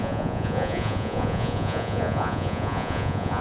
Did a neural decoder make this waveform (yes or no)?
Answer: yes